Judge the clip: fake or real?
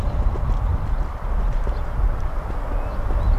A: real